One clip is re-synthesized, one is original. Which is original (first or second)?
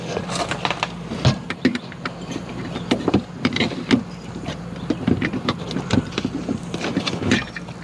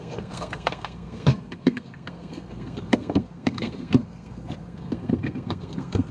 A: first